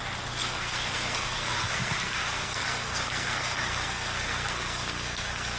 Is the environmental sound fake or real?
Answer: fake